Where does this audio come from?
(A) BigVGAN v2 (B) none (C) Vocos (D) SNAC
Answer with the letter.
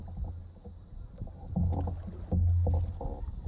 B